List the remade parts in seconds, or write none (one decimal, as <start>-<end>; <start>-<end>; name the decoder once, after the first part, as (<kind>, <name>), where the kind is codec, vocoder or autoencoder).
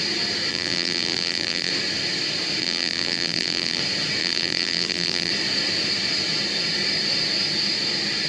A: 0.5-1.7 (vocoder, BigVGAN v2); 2.6-3.8; 4.2-5.3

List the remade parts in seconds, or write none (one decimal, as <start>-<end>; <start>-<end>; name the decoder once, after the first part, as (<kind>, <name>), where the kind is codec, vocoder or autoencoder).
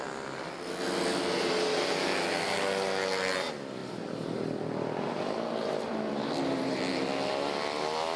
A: 3.8-6.8 (vocoder, BigVGAN v2)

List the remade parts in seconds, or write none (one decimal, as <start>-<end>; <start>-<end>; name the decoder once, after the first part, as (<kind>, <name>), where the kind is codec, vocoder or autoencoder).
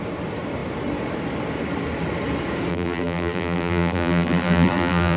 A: 2.7-5.2 (vocoder, BigVGAN v2)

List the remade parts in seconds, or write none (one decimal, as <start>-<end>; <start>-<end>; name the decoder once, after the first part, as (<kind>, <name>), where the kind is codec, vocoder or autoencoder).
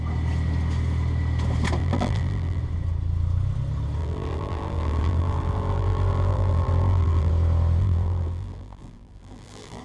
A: 1.8-2.6 (vocoder, BigVGAN v2); 4.0-7.3; 7.8-9.8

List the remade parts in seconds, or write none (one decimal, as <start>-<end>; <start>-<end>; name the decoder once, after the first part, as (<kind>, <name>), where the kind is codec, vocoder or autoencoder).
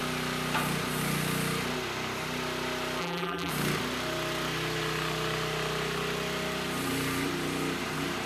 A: 3.0-3.5 (vocoder, BigVGAN v2)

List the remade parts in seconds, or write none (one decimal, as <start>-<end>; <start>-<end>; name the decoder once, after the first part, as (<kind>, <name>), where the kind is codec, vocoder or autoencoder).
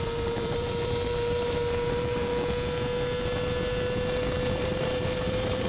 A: 0.0-2.3 (vocoder, BigVGAN v2); 4.5-5.7